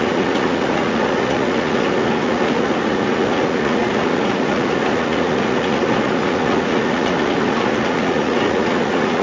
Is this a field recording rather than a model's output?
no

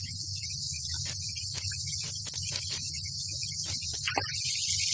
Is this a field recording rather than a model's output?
yes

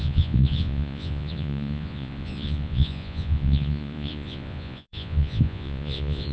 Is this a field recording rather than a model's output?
no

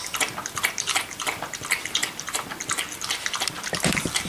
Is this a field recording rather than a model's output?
yes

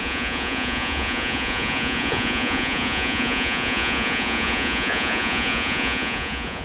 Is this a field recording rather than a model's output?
no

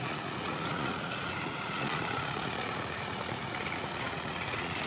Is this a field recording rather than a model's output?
no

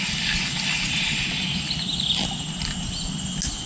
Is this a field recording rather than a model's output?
yes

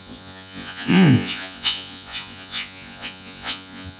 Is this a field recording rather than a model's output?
no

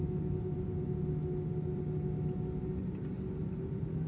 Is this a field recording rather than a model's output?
yes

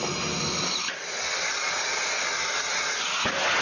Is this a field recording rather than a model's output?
yes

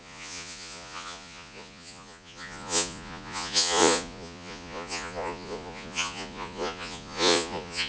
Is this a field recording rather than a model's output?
no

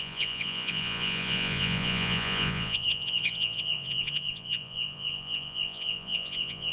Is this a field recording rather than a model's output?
no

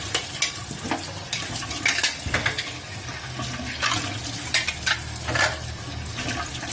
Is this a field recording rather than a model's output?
yes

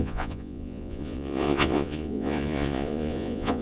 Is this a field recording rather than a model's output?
no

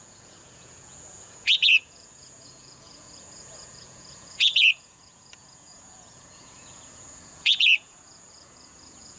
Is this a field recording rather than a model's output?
no